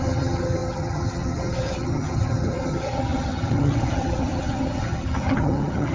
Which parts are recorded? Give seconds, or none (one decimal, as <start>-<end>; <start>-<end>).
none